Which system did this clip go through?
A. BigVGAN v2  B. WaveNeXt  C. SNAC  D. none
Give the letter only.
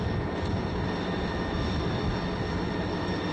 D